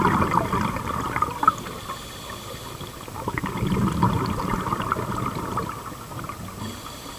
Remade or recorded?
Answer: recorded